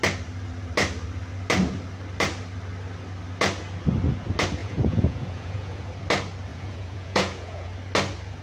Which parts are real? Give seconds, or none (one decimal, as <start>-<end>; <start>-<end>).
0.0-4.6; 5.9-6.5; 7.7-8.4